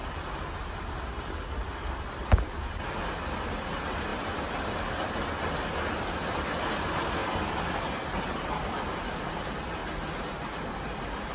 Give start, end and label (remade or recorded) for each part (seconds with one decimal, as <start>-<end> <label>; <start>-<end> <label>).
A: 0.0-11.3 recorded